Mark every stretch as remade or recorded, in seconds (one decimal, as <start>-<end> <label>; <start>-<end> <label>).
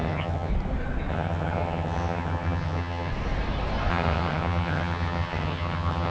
0.0-0.5 remade; 0.5-1.1 recorded; 1.1-3.1 remade; 3.1-3.9 recorded; 3.9-6.1 remade